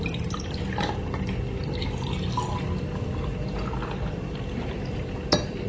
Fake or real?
real